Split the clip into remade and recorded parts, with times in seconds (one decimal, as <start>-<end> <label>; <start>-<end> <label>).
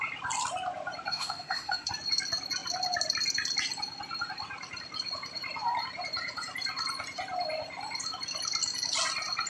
0.0-1.1 recorded; 1.1-1.9 remade; 1.9-9.5 recorded